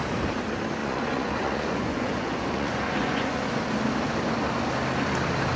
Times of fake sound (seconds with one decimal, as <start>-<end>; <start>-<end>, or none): 0.8-3.5